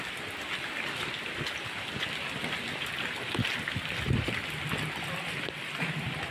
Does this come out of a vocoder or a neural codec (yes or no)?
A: no